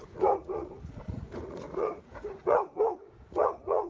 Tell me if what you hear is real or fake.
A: fake